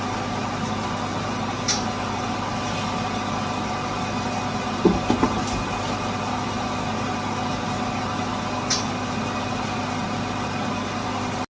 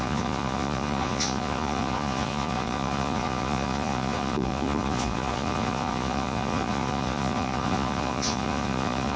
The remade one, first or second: second